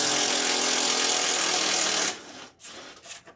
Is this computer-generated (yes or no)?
no